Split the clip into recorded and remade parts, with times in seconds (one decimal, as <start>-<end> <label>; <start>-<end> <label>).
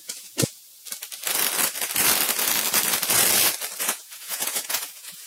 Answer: 0.0-0.6 remade; 0.6-3.8 recorded; 3.8-5.3 remade